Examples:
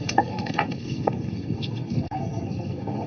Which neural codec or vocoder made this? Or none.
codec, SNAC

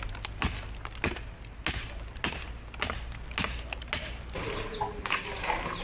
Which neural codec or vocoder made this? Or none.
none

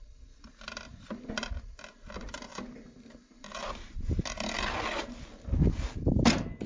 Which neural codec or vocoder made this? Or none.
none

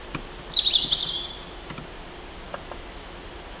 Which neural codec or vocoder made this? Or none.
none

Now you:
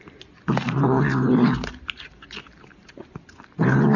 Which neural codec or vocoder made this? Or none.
none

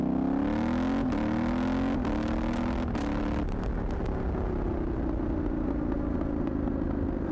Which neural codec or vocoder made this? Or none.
none